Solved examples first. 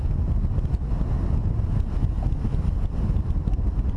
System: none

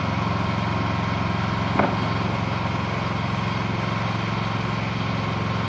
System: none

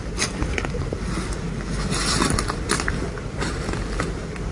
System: none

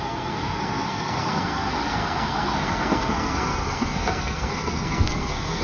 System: codec, SNAC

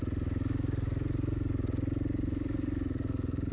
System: none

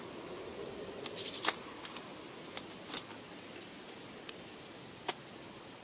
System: none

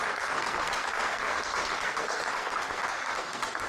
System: codec, SNAC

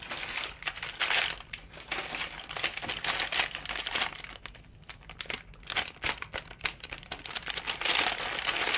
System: none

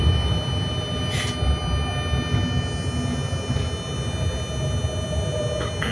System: none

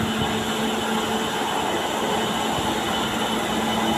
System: none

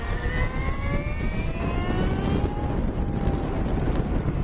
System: none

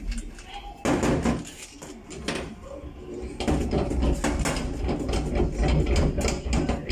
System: none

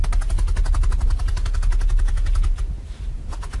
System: none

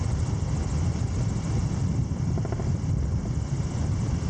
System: none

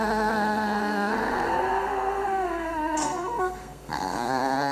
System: codec, SNAC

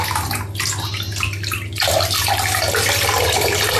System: none